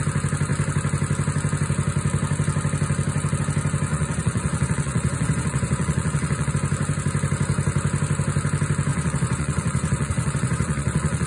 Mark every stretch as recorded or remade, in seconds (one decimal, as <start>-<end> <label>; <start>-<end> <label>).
0.0-3.9 recorded; 3.9-6.5 remade; 6.5-8.9 recorded; 8.9-11.3 remade

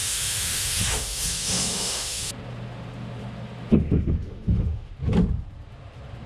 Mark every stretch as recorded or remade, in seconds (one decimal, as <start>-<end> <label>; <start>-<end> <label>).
0.0-2.3 remade; 2.3-3.7 recorded; 3.7-4.9 remade; 4.9-6.3 recorded

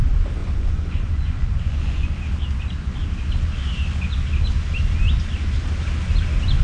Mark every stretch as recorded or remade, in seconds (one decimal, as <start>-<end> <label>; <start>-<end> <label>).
0.0-0.4 recorded; 0.4-2.1 remade; 2.1-6.6 recorded

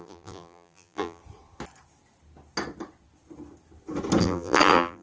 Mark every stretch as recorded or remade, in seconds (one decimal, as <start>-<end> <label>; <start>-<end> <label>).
0.0-1.2 remade; 1.2-4.2 recorded; 4.2-5.0 remade

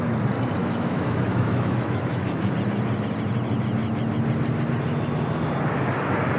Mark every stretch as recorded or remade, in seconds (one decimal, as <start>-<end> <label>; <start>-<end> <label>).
0.0-0.6 recorded; 0.6-2.5 remade; 2.5-6.4 recorded

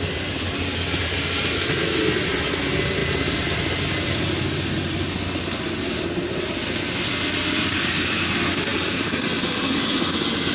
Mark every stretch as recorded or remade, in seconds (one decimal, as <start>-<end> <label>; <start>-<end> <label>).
0.0-3.0 recorded; 3.0-4.3 remade; 4.3-8.7 recorded; 8.7-9.4 remade; 9.4-10.5 recorded

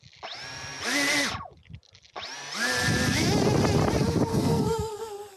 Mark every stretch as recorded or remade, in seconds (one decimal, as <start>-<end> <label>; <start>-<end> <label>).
0.0-4.3 recorded; 4.3-5.0 remade; 5.0-5.4 recorded